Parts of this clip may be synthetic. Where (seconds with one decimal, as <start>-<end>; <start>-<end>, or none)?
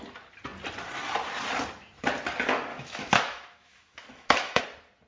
2.7-4.6